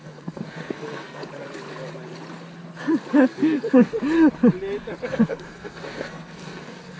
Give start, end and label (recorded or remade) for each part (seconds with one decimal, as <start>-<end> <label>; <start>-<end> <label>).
0.0-1.2 remade; 1.2-3.1 recorded; 3.1-3.9 remade; 3.9-5.2 recorded; 5.2-7.0 remade